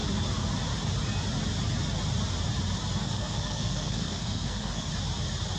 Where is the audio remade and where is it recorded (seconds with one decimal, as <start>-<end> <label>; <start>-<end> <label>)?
0.0-3.0 recorded; 3.0-4.9 remade; 4.9-5.6 recorded